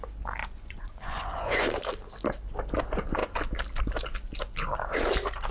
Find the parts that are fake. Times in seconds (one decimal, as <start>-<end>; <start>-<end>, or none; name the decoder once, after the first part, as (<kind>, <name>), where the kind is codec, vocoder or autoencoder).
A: 0.4-1.8 (vocoder, Vocos)